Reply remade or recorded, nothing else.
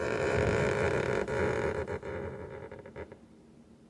remade